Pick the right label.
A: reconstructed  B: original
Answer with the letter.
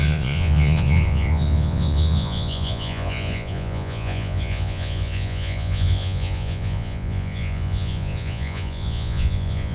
A